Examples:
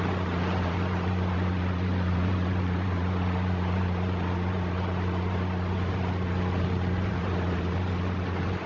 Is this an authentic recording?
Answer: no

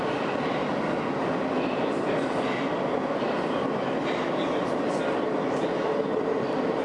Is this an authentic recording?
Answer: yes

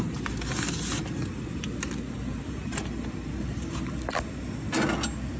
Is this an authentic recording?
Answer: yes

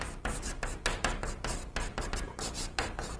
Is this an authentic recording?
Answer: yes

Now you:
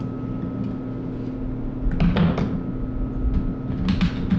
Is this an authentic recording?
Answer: yes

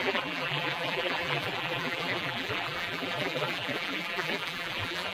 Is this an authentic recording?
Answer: no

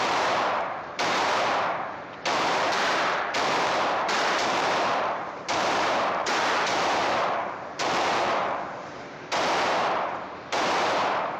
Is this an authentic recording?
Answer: no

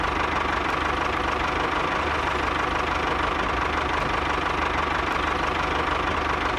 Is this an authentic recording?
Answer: yes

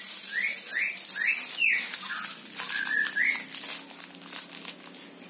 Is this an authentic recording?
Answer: yes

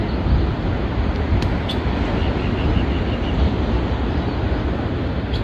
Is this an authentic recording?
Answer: yes